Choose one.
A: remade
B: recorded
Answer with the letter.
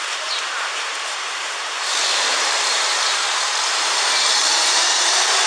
A